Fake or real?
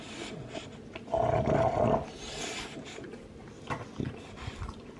real